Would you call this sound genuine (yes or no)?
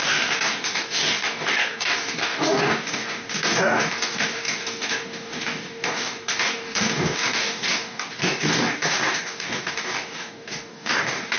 no